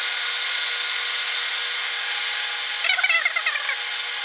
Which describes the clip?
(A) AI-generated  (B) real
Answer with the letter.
B